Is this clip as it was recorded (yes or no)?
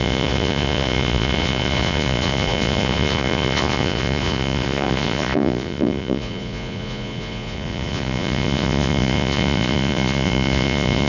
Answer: no